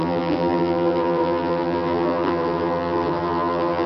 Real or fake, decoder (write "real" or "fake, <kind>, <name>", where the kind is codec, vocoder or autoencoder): fake, vocoder, BigVGAN v2